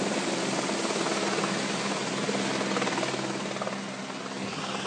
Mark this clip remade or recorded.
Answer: recorded